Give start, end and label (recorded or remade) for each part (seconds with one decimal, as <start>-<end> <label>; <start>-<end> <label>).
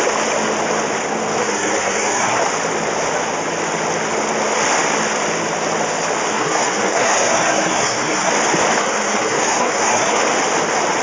0.0-1.4 recorded; 1.4-2.4 remade; 2.4-6.3 recorded; 6.3-8.3 remade; 8.3-8.8 recorded; 8.8-10.2 remade; 10.2-11.0 recorded